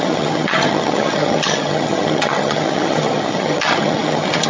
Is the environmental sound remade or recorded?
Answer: remade